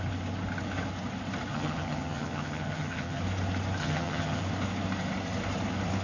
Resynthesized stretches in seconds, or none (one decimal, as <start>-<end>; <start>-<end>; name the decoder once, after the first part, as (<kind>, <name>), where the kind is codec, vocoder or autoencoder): 1.5-3.2 (vocoder, HiFi-GAN); 3.8-4.4